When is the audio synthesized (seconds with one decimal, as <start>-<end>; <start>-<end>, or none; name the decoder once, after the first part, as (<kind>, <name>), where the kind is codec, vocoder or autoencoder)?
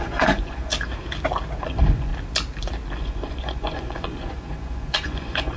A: 0.0-0.7 (vocoder, Vocos); 1.6-2.1; 3.0-5.6